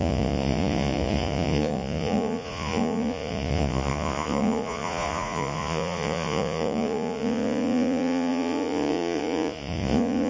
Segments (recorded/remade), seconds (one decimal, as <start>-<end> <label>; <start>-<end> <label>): 0.0-10.3 remade